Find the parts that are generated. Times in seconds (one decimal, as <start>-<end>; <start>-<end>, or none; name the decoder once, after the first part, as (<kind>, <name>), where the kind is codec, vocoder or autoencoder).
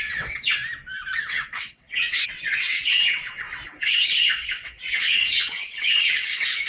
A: 0.0-0.6 (vocoder, WaveNeXt); 1.2-6.7